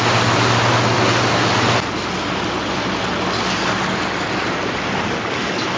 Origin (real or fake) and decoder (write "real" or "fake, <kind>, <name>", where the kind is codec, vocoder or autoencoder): real